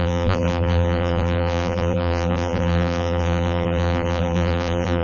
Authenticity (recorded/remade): remade